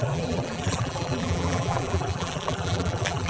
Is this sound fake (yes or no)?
yes